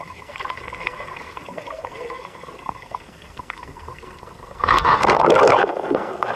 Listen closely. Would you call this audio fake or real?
fake